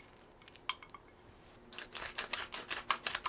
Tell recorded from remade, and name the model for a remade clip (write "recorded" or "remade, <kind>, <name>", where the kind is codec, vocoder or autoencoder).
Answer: recorded